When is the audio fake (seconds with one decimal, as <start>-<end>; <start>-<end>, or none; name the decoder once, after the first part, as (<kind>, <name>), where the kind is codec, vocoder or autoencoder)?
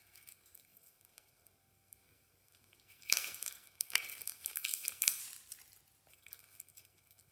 0.0-5.2 (codec, SNAC); 6.1-7.3